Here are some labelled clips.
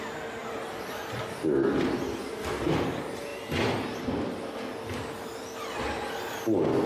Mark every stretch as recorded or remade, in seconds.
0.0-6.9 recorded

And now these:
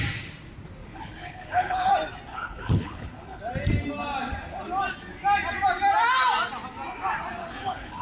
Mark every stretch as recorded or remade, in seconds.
0.0-0.8 recorded; 0.8-1.9 remade; 1.9-2.3 recorded; 2.3-3.4 remade; 3.4-7.4 recorded; 7.4-8.0 remade

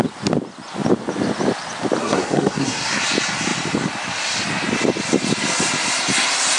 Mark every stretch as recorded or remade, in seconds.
0.0-2.0 recorded; 2.0-3.0 remade; 3.0-6.6 recorded

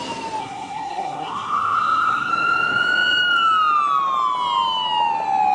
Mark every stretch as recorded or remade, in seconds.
0.0-0.4 recorded; 0.4-2.3 remade; 2.3-5.5 recorded

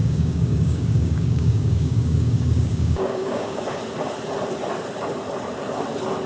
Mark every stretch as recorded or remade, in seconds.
0.0-3.8 remade; 3.8-6.3 recorded

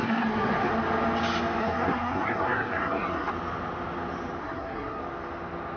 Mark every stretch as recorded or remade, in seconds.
0.0-0.7 remade; 0.7-1.6 recorded; 1.6-3.3 remade; 3.3-4.4 recorded; 4.4-5.0 remade; 5.0-5.8 recorded